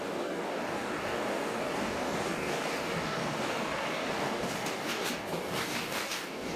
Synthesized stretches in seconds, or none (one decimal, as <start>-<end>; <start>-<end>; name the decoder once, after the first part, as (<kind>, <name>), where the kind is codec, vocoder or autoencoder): 0.0-6.6 (codec, DAC)